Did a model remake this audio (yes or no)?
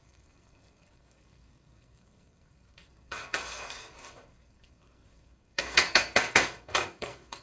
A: yes